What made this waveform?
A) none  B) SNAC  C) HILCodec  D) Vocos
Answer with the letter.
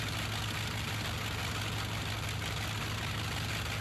A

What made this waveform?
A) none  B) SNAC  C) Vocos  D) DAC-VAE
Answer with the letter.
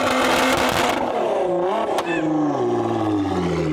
A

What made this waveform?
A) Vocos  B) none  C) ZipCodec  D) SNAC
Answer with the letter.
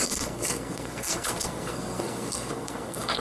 D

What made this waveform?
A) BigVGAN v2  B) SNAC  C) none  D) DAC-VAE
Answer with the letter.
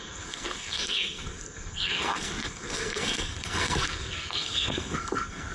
B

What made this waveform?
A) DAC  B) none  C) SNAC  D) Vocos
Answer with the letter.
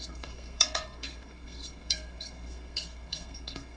C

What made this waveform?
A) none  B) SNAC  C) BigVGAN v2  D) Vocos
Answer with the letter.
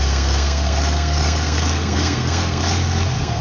B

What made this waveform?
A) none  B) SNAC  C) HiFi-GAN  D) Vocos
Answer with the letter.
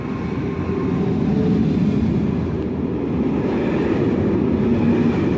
A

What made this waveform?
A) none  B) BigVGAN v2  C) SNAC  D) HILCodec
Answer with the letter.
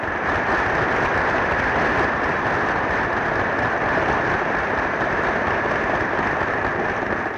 A